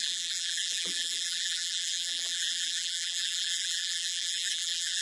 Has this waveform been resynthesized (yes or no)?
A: yes